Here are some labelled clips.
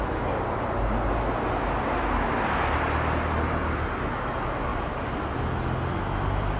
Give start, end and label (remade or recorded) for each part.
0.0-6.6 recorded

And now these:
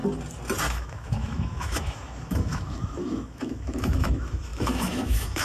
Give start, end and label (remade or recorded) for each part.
0.0-0.7 recorded; 0.7-5.4 remade

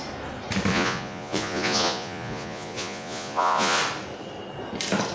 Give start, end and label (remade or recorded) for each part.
0.0-0.7 recorded; 0.7-3.8 remade; 3.8-5.1 recorded

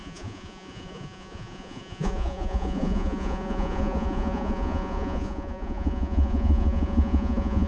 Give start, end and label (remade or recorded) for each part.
0.0-7.7 remade

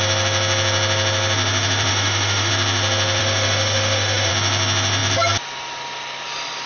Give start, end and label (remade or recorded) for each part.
0.0-1.9 recorded; 1.9-2.5 remade; 2.5-3.2 recorded; 3.2-4.3 remade; 4.3-6.7 recorded

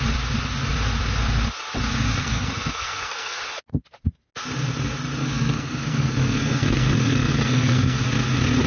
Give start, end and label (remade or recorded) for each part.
0.0-2.2 recorded; 2.2-3.4 remade; 3.4-5.2 recorded; 5.2-8.0 remade; 8.0-8.7 recorded